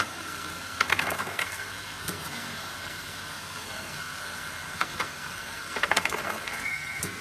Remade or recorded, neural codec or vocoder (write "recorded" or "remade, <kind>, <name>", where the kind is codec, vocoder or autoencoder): remade, codec, SNAC